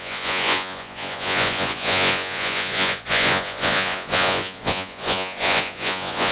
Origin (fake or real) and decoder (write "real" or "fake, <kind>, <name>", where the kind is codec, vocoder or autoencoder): fake, vocoder, Vocos